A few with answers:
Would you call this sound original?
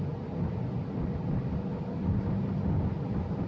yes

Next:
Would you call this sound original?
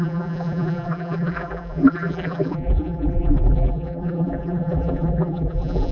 no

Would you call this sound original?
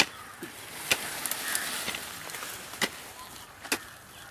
yes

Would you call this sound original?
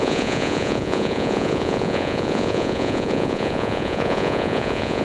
no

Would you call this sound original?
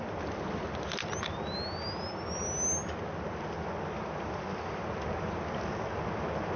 yes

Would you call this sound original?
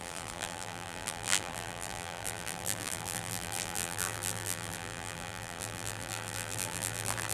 no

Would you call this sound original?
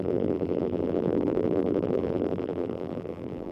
no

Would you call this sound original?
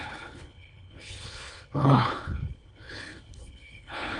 no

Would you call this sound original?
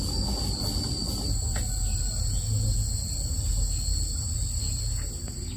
yes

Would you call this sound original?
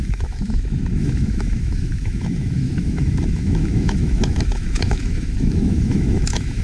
no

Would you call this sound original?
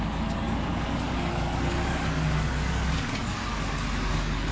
no